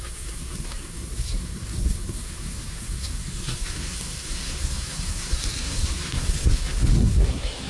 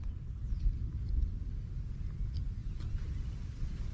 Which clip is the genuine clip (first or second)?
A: second